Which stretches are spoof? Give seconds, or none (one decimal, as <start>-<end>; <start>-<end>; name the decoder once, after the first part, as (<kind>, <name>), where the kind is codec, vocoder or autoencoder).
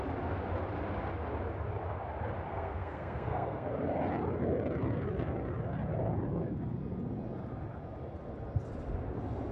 2.5-3.7 (codec, SNAC)